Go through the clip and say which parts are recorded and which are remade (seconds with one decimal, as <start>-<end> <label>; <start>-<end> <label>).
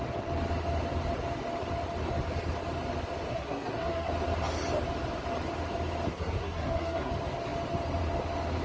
0.0-3.3 recorded; 3.3-4.1 remade; 4.1-6.1 recorded; 6.1-7.1 remade; 7.1-8.6 recorded